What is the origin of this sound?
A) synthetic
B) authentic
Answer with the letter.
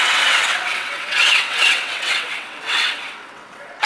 A